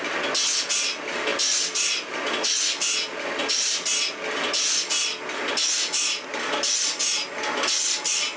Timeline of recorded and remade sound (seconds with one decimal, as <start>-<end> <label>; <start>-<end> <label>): 0.0-8.4 recorded